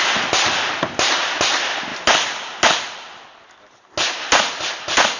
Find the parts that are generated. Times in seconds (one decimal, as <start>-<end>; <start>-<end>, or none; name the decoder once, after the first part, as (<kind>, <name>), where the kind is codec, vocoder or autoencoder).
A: none